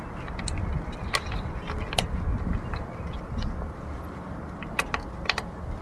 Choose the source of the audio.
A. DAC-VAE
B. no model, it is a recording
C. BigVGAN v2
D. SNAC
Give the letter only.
B